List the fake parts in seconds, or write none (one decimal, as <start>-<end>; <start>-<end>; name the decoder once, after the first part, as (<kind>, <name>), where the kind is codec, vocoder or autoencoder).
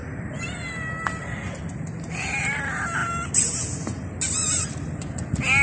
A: none